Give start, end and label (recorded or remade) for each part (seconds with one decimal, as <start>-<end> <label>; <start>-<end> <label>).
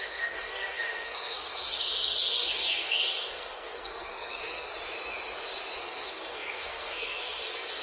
0.0-4.7 remade; 4.7-5.8 recorded; 5.8-7.8 remade